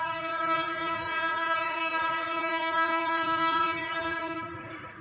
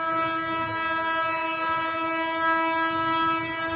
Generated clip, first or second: first